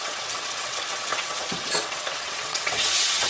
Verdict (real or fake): fake